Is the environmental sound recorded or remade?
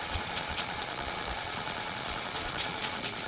remade